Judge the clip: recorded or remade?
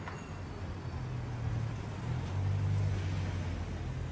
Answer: recorded